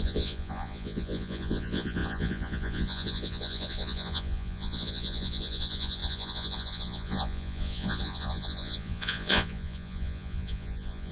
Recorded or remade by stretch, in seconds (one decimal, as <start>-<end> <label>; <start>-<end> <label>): 0.0-11.1 remade